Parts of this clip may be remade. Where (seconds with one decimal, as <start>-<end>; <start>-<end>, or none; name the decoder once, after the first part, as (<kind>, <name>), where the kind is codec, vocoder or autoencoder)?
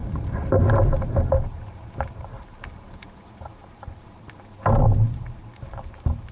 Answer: 0.0-6.3 (vocoder, BigVGAN v2)